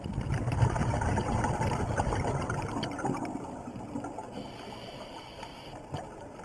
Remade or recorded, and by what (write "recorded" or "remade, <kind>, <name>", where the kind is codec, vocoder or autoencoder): recorded